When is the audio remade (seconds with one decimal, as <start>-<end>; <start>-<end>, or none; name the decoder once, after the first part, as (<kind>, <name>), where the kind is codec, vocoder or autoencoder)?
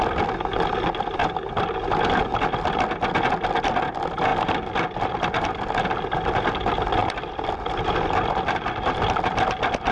7.0-9.0 (vocoder, BigVGAN v2)